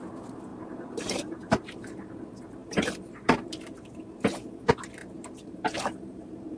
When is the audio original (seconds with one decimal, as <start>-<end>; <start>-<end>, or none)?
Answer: 0.0-0.5; 2.1-2.6; 4.0-5.0